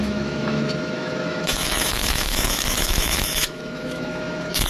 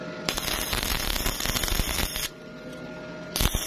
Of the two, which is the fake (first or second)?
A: first